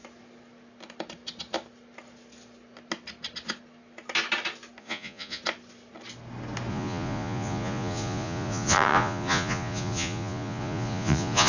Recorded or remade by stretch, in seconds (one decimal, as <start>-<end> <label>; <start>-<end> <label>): 0.0-4.8 recorded; 4.8-5.4 remade; 5.4-6.7 recorded; 6.7-11.5 remade